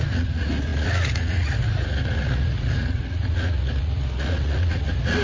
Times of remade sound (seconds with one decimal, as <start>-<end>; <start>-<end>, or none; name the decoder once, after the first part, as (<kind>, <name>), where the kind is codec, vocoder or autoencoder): 0.0-5.2 (vocoder, Vocos)